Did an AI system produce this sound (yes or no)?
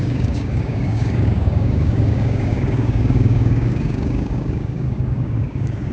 yes